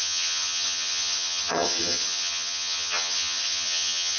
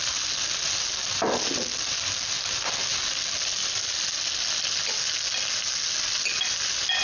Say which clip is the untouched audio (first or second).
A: second